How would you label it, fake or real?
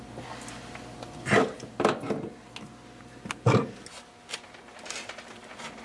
real